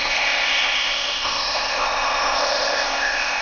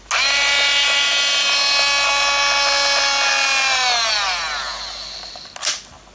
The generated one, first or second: first